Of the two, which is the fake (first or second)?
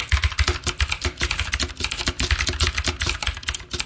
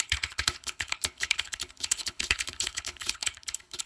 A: second